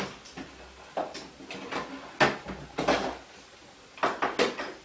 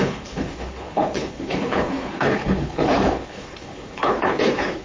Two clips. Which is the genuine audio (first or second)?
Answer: first